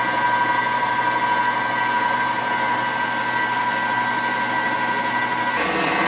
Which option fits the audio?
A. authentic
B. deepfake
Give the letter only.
A